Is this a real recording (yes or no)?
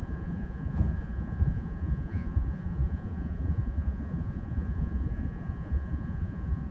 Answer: no